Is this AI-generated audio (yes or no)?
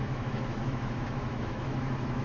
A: yes